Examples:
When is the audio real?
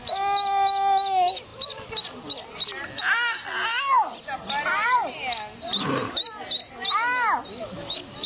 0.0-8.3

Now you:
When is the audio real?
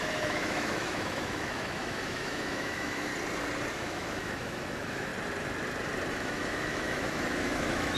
3.1-3.7; 5.1-6.1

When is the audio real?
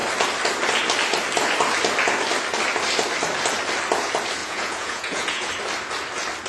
0.0-4.4; 5.5-6.5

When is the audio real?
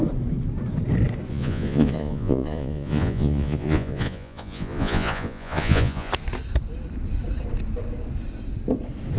0.0-1.3; 6.1-9.2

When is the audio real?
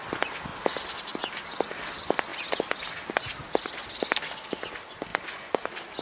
0.0-6.0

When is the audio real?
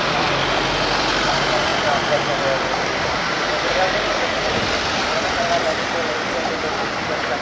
0.0-7.4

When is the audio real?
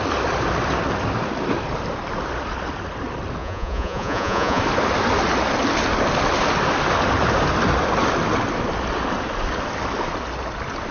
0.0-3.4; 4.6-10.9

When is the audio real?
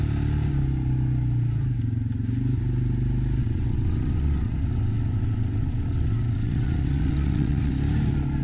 0.0-3.4; 7.7-8.4